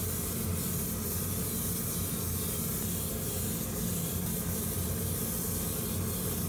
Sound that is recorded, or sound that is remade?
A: recorded